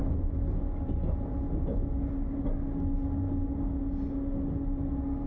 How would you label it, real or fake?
real